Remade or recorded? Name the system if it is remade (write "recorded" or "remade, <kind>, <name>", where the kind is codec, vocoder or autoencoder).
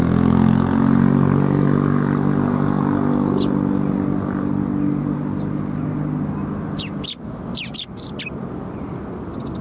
recorded